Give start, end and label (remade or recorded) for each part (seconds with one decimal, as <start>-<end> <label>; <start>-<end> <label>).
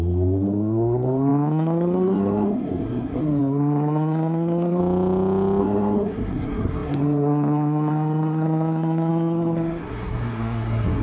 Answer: 0.0-4.8 remade; 4.8-5.6 recorded; 5.6-11.0 remade